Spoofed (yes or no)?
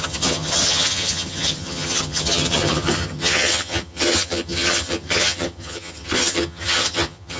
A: yes